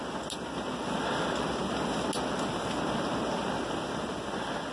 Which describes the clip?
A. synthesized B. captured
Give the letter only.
B